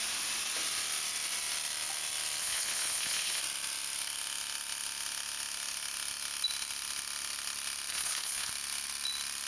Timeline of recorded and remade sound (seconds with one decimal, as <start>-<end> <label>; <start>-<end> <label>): 0.0-2.4 recorded; 2.4-3.4 remade; 3.4-7.9 recorded; 7.9-8.5 remade; 8.5-9.5 recorded